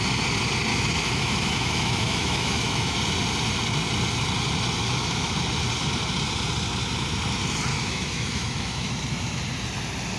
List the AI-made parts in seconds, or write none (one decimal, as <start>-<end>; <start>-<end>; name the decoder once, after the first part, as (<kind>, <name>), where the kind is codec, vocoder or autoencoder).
0.7-3.0 (autoencoder, DAC-VAE); 4.8-5.3; 7.7-8.9